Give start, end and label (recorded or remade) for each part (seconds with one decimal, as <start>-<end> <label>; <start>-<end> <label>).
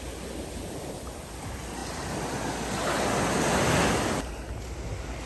0.0-5.3 recorded